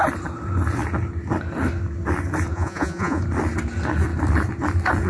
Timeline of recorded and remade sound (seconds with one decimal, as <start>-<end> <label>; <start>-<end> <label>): 0.0-2.5 recorded; 2.5-3.2 remade; 3.2-5.1 recorded